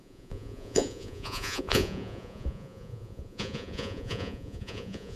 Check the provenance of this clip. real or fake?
fake